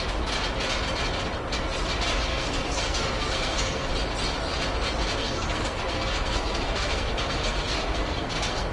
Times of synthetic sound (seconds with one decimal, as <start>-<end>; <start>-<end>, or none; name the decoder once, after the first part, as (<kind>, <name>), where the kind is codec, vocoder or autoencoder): 2.3-3.9 (codec, SNAC); 5.2-8.7